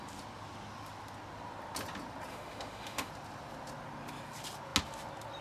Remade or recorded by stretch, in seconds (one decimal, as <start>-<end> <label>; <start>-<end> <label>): 0.0-2.3 recorded; 2.3-3.1 remade; 3.1-5.4 recorded